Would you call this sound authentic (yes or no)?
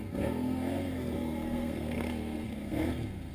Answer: no